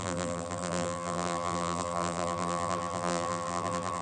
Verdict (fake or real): fake